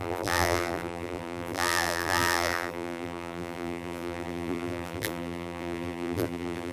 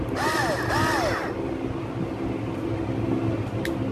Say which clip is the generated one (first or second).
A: first